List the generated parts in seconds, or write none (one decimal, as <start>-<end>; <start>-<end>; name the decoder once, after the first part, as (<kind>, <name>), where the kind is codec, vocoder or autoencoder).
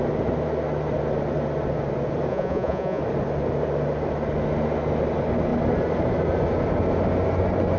2.3-3.0 (vocoder, Vocos)